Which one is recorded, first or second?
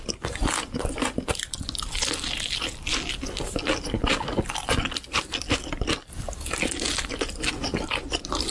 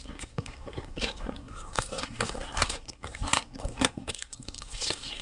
first